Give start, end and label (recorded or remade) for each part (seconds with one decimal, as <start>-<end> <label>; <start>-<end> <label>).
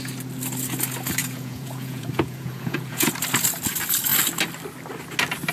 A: 0.0-1.2 recorded; 1.2-3.1 remade; 3.1-5.5 recorded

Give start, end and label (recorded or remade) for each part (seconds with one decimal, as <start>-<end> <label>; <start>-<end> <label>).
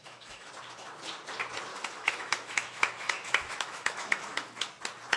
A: 0.0-0.5 remade; 0.5-1.7 recorded; 1.7-4.7 remade; 4.7-5.2 recorded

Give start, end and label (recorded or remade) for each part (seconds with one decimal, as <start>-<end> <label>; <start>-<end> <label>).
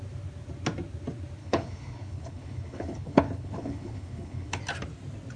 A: 0.0-1.4 recorded; 1.4-4.6 remade; 4.6-5.4 recorded